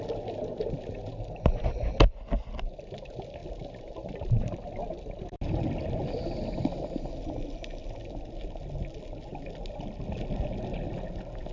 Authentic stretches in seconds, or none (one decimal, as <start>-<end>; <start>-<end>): 0.0-11.5